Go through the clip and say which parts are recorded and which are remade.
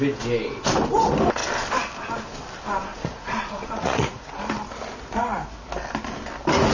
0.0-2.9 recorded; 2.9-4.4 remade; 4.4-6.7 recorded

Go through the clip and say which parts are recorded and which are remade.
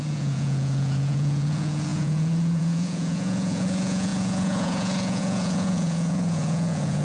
0.0-7.0 remade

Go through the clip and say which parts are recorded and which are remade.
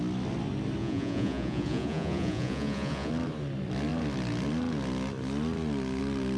0.0-0.8 recorded; 0.8-3.1 remade; 3.1-6.4 recorded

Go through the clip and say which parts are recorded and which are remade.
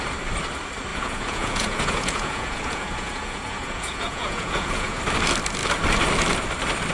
0.0-0.9 recorded; 0.9-5.0 remade; 5.0-6.9 recorded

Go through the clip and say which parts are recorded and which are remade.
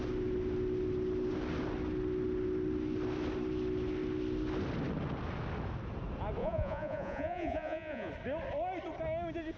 0.0-6.4 recorded; 6.4-8.1 remade; 8.1-9.6 recorded